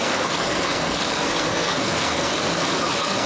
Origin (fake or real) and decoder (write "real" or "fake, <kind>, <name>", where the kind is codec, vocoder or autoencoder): fake, codec, SNAC